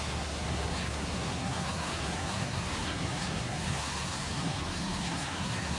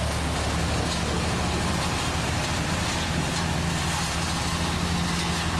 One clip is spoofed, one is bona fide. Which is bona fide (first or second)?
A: second